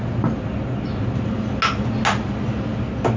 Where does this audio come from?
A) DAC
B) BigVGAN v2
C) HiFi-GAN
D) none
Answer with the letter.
D